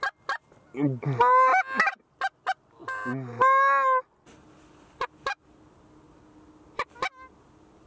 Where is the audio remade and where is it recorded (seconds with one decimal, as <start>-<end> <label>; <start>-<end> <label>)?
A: 0.0-7.9 recorded